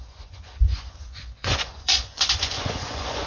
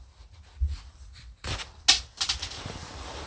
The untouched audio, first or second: second